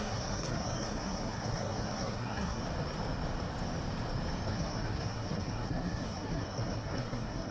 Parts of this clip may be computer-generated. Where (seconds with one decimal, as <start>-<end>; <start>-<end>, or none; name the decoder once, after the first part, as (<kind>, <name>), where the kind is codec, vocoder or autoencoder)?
0.0-2.6 (codec, SNAC); 4.5-7.5